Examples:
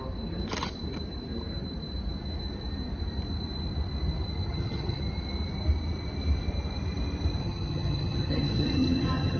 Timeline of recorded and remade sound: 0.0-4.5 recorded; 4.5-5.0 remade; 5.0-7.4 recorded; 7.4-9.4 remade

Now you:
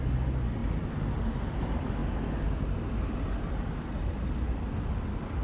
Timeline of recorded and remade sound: 0.0-5.4 recorded

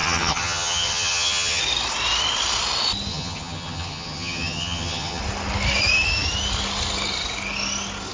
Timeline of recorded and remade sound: 0.0-1.6 remade; 1.6-3.1 recorded; 3.1-5.2 remade; 5.2-8.1 recorded

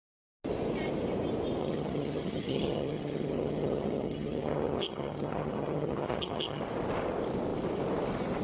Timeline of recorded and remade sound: 0.0-1.6 recorded; 1.6-6.6 remade; 6.6-8.4 recorded

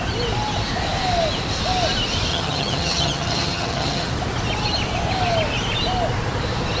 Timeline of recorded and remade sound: 0.0-2.3 recorded; 2.3-4.1 remade; 4.1-6.8 recorded

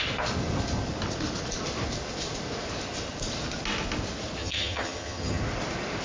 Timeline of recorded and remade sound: 0.0-4.4 recorded; 4.4-5.4 remade; 5.4-6.0 recorded